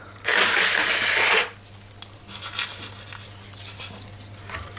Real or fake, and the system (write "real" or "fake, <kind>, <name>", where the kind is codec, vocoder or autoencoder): real